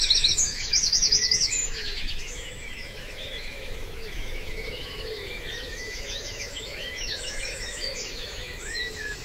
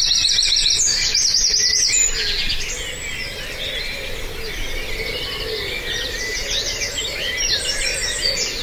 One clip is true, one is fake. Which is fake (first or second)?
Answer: first